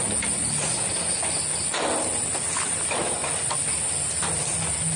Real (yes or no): yes